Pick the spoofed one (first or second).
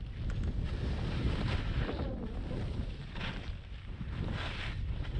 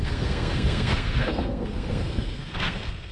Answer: second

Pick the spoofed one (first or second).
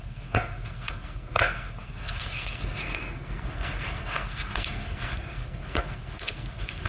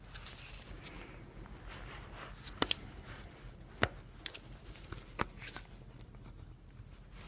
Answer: first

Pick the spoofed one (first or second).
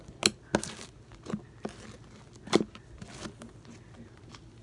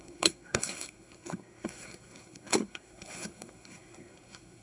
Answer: second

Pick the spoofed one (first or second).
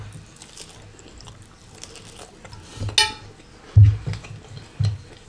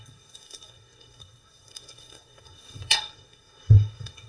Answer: second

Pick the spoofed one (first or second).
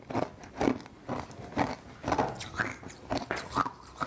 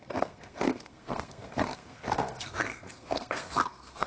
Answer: second